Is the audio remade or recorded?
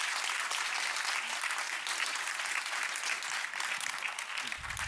recorded